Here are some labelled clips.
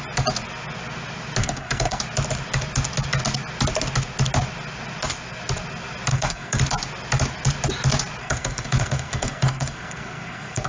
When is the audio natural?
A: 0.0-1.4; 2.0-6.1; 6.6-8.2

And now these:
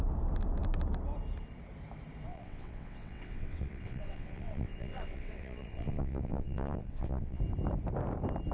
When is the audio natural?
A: 0.0-2.3; 7.4-8.5

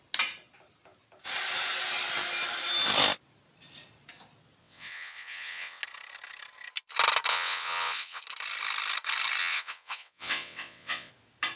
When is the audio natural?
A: 0.0-4.6; 5.8-7.3; 8.2-9.4; 11.1-11.6

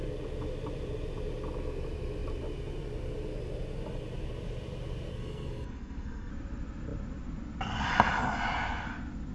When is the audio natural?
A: 0.0-5.1; 6.3-9.3

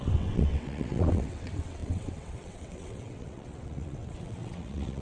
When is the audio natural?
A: none